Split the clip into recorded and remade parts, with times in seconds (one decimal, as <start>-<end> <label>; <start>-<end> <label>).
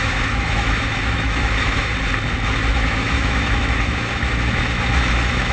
0.0-1.9 remade; 1.9-2.7 recorded; 2.7-5.5 remade